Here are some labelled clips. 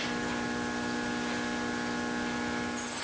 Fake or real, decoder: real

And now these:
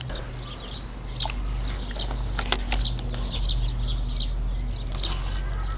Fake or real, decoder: real